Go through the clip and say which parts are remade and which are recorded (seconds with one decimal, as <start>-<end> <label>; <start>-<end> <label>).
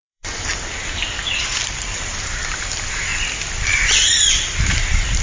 0.0-3.1 remade; 3.1-4.3 recorded; 4.3-5.2 remade